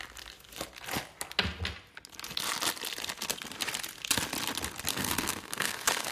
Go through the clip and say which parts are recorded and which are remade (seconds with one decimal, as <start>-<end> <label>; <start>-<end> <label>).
0.0-4.9 recorded; 4.9-6.1 remade